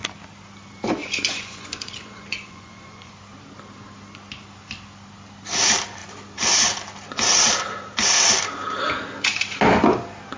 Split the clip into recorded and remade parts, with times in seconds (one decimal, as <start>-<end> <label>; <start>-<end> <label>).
0.0-1.0 recorded; 1.0-3.1 remade; 3.1-10.4 recorded